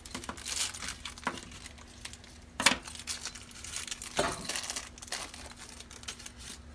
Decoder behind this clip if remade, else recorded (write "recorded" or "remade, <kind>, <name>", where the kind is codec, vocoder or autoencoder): recorded